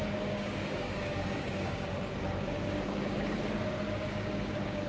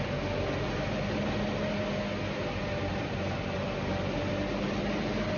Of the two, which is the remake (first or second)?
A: first